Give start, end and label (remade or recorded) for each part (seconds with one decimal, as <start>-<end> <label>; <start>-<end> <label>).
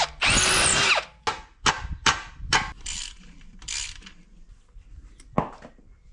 0.0-0.7 remade; 0.7-1.7 recorded; 1.7-4.1 remade; 4.1-5.5 recorded; 5.5-6.1 remade